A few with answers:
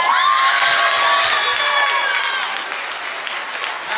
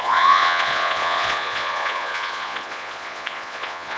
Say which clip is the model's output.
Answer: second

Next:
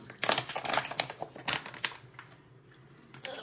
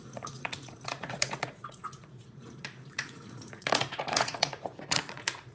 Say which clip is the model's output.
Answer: second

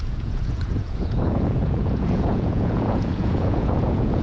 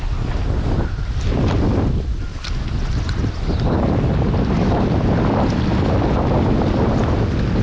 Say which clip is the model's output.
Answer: first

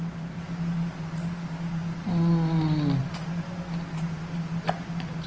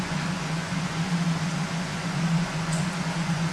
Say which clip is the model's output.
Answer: second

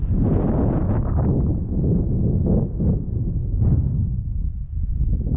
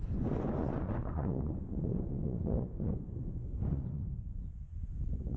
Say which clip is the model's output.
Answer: second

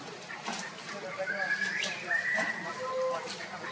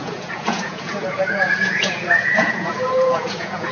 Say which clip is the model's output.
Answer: second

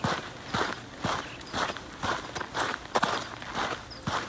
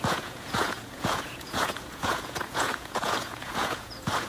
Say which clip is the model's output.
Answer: second